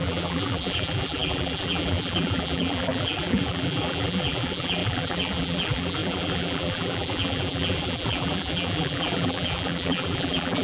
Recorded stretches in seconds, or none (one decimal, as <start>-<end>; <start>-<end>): none